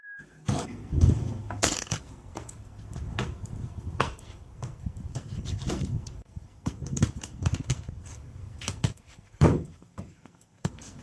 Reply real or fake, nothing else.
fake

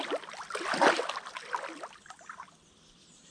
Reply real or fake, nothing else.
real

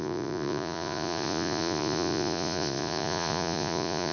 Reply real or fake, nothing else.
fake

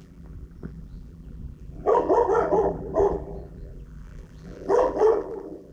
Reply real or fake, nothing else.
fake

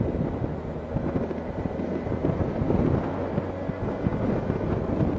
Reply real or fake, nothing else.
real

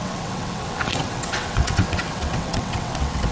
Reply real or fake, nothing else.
fake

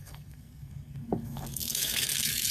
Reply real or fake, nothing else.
fake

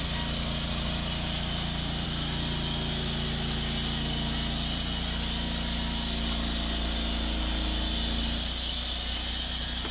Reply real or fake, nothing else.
real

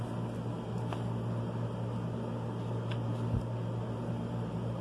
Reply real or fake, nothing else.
real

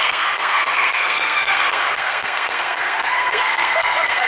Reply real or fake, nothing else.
fake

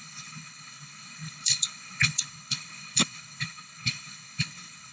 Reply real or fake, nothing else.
fake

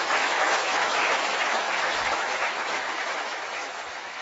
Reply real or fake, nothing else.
fake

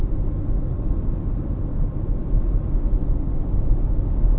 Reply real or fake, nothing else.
real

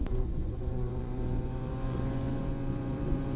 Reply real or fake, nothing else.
fake